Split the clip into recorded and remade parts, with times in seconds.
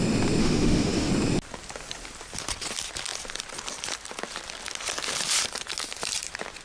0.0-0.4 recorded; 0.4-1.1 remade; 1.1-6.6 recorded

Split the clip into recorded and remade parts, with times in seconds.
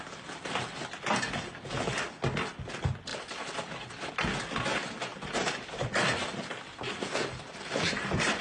0.0-5.1 recorded; 5.1-5.9 remade; 5.9-8.4 recorded